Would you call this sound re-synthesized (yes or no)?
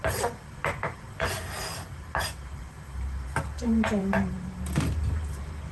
yes